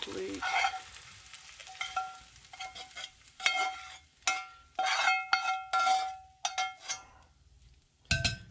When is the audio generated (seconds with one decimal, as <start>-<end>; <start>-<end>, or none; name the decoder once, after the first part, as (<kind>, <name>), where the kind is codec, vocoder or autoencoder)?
none